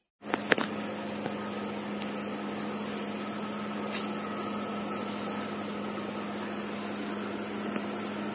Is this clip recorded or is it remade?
recorded